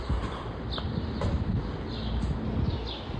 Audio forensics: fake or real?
real